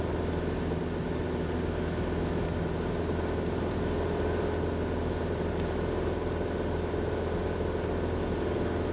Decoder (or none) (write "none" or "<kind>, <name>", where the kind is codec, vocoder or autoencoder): none